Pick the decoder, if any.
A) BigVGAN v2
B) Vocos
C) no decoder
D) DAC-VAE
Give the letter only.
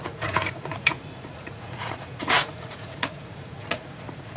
B